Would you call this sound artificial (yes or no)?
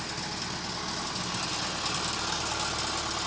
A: no